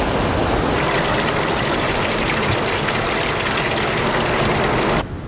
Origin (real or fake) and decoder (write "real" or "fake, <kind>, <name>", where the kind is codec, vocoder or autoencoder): real